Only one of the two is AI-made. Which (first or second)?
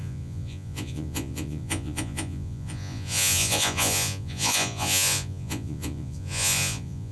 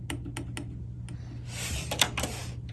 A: first